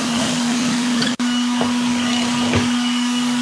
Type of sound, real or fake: fake